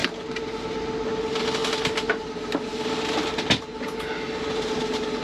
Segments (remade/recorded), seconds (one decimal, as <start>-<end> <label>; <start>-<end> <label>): 0.0-5.2 recorded